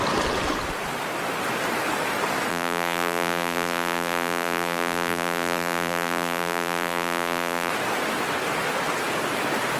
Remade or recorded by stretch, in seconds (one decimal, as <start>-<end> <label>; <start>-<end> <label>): 0.0-2.5 recorded; 2.5-7.7 remade; 7.7-9.8 recorded